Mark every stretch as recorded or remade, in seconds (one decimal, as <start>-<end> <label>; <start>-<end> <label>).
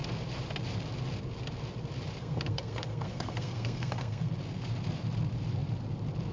0.0-2.2 recorded; 2.2-4.3 remade; 4.3-6.3 recorded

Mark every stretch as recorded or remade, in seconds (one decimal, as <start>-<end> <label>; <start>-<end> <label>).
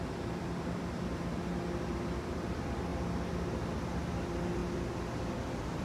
0.0-1.5 remade; 1.5-2.3 recorded; 2.3-2.9 remade; 2.9-4.0 recorded; 4.0-4.6 remade; 4.6-5.3 recorded; 5.3-5.8 remade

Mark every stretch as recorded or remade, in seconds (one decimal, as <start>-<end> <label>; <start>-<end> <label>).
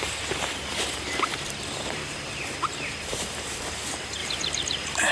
0.0-5.1 remade